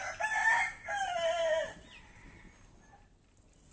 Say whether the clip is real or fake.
real